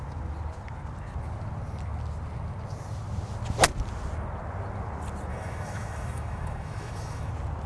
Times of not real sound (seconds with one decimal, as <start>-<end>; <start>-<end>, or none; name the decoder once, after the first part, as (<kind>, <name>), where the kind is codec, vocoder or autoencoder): 5.3-7.3 (autoencoder, DAC-VAE)